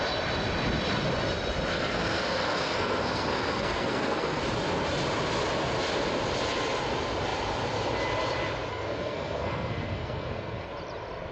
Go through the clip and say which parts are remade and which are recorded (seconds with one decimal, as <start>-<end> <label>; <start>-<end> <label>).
0.0-1.7 recorded; 1.7-4.4 remade; 4.4-8.7 recorded; 8.7-10.7 remade; 10.7-11.3 recorded

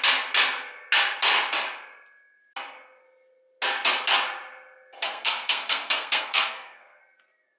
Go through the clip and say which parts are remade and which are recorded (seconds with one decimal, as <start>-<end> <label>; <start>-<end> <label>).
0.0-5.1 recorded; 5.1-7.0 remade; 7.0-7.6 recorded

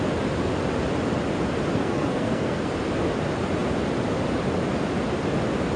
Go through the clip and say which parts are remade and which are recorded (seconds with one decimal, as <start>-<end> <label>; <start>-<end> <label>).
0.0-1.7 recorded; 1.7-2.7 remade; 2.7-5.8 recorded

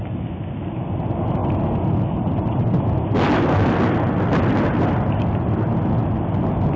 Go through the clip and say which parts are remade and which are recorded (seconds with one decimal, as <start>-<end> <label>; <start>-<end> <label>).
0.0-6.8 recorded

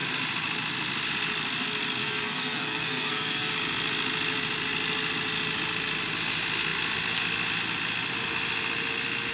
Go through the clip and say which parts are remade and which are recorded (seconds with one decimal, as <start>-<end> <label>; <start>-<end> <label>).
0.0-2.0 recorded; 2.0-3.5 remade; 3.5-9.3 recorded

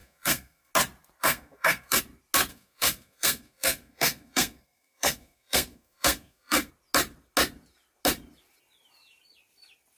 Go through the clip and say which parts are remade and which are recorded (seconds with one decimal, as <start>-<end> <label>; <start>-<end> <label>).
0.0-0.7 remade; 0.7-1.2 recorded; 1.2-2.0 remade; 2.0-2.5 recorded; 2.5-6.7 remade; 6.7-10.0 recorded